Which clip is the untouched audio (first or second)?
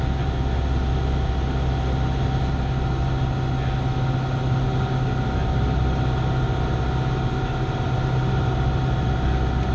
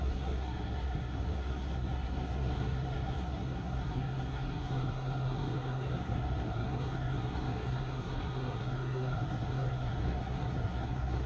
first